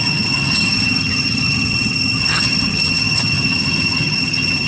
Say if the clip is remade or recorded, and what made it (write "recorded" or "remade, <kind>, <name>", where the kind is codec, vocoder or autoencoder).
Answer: remade, vocoder, HiFi-GAN